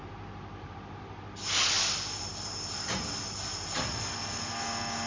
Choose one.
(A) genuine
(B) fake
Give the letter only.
A